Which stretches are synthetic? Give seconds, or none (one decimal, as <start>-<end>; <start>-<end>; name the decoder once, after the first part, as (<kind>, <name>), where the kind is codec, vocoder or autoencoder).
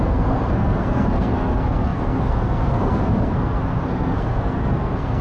0.0-5.2 (codec, SNAC)